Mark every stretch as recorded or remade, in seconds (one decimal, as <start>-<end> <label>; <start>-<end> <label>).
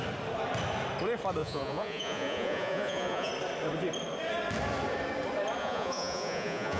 0.0-1.4 recorded; 1.4-3.3 remade; 3.3-5.6 recorded; 5.6-6.8 remade